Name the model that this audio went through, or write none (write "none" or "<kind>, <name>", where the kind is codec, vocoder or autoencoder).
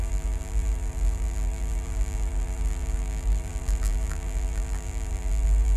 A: vocoder, BigVGAN v2